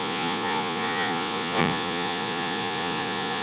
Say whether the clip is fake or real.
fake